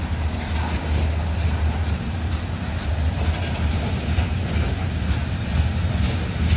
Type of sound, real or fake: real